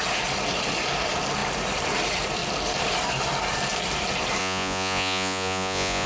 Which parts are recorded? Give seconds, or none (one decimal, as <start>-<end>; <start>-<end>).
0.0-4.4